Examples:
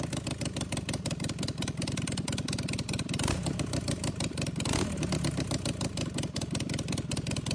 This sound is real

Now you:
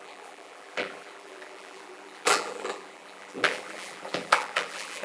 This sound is fake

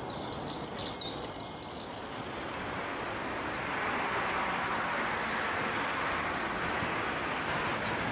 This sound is real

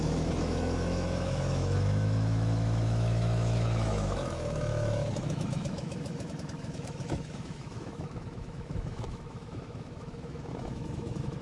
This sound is fake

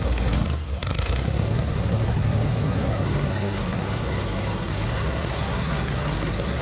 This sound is fake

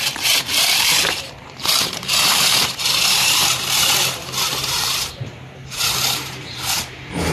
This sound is fake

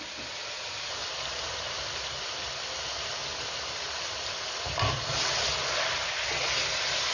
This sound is real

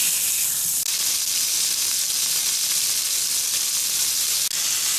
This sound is real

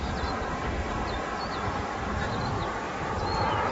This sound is real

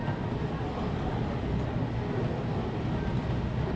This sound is real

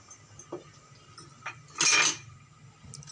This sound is real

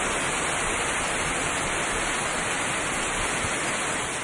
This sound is real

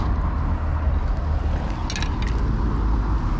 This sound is real